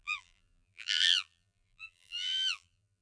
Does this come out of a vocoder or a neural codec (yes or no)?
yes